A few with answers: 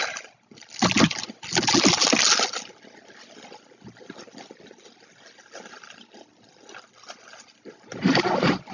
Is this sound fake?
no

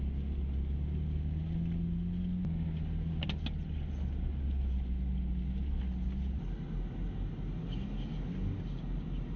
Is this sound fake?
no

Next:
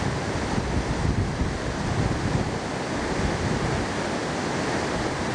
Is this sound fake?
no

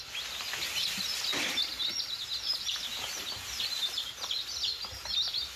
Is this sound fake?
no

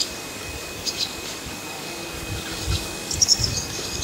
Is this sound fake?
yes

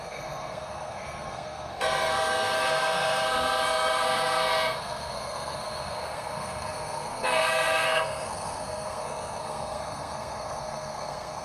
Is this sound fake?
yes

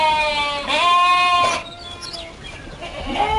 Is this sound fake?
no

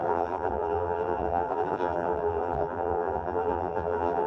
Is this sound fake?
yes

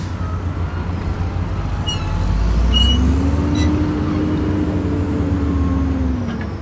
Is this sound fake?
no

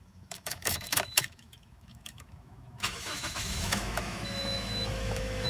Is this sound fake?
yes